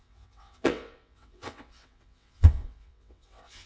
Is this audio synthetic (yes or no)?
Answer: yes